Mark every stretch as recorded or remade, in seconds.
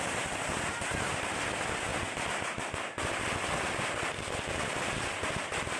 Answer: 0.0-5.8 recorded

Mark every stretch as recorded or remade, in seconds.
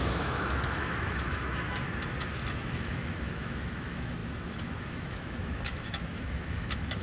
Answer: 0.0-1.8 remade; 1.8-2.5 recorded; 2.5-7.0 remade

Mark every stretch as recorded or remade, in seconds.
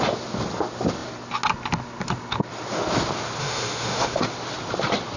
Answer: 0.0-3.4 recorded; 3.4-4.2 remade; 4.2-5.2 recorded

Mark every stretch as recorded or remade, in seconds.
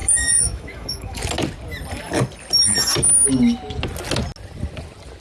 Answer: 0.0-1.2 remade; 1.2-5.2 recorded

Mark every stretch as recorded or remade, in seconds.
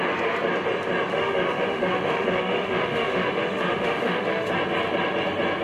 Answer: 0.0-1.1 recorded; 1.1-4.5 remade; 4.5-5.6 recorded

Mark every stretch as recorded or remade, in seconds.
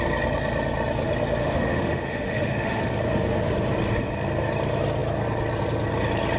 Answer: 0.0-1.4 recorded; 1.4-2.8 remade; 2.8-6.4 recorded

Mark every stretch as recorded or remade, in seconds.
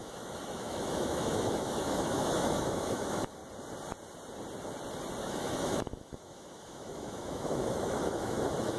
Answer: 0.0-3.4 remade; 3.4-5.2 recorded; 5.2-8.8 remade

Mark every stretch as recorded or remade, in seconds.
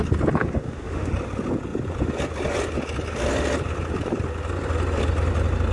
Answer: 0.0-0.4 recorded; 0.4-1.1 remade; 1.1-5.7 recorded